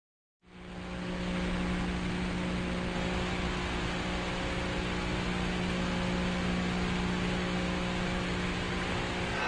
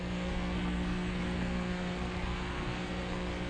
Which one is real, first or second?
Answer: first